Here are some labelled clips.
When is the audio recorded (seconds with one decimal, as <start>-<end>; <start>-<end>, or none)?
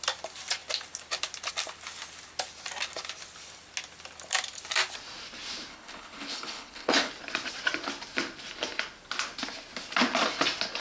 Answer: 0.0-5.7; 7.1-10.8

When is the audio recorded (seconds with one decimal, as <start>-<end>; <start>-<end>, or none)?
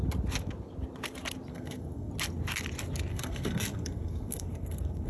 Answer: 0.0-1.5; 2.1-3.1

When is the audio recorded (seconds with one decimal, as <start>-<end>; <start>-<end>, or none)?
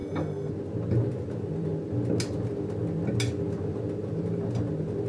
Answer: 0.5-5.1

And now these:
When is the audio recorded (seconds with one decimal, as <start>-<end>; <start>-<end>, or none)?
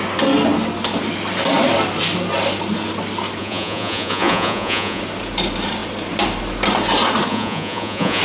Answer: 0.0-3.4; 5.0-7.3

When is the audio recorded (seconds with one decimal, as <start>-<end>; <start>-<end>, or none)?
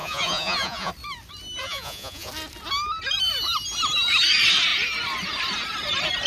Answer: 0.9-1.6; 2.3-6.3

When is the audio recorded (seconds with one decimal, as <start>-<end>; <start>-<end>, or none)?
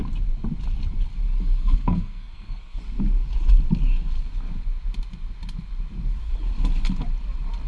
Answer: 0.0-1.6; 2.8-7.7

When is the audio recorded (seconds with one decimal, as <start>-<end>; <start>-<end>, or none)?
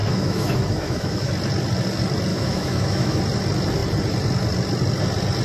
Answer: 1.3-2.3; 3.2-5.4